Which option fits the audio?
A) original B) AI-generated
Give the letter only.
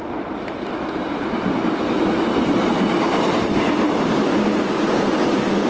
A